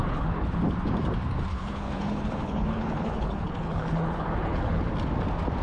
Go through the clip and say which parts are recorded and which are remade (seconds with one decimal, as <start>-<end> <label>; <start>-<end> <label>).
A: 0.0-0.6 remade; 0.6-1.5 recorded; 1.5-4.9 remade; 4.9-5.6 recorded